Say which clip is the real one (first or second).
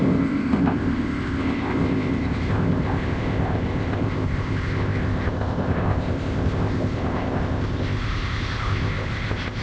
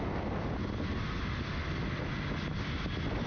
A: second